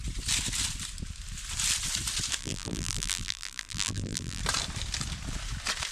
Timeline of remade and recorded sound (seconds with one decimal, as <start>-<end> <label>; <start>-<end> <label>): 0.0-2.4 recorded; 2.4-4.4 remade; 4.4-5.9 recorded